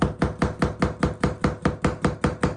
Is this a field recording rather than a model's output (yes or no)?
yes